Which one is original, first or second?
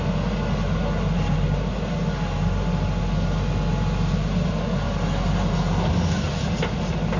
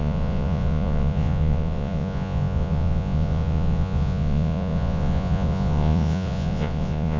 first